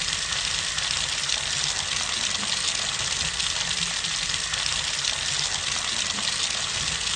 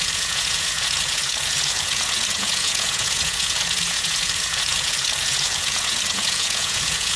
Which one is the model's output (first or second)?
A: second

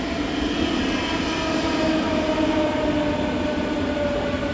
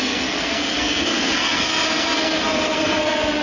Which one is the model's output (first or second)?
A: second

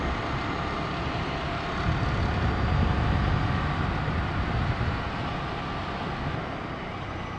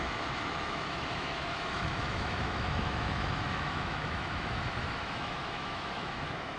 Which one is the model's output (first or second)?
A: second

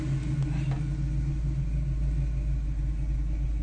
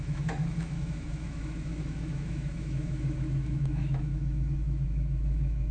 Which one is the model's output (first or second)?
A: second